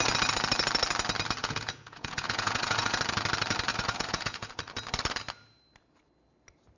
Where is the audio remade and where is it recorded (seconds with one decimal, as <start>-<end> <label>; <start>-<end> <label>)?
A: 0.0-1.4 recorded; 1.4-3.0 remade; 3.0-3.7 recorded; 3.7-4.5 remade; 4.5-6.8 recorded